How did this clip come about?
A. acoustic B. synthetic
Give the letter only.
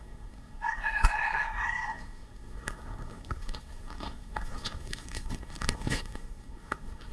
B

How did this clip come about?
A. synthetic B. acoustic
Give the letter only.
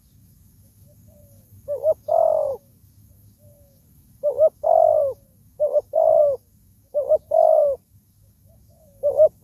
A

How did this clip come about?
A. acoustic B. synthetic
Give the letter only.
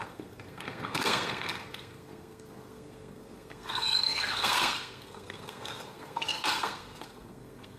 B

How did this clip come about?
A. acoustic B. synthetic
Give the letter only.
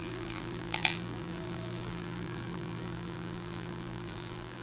B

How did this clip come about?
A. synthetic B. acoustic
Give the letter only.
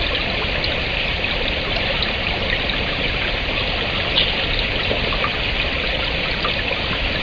B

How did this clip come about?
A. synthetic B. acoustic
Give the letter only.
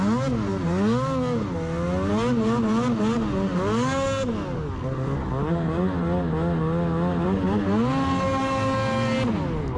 B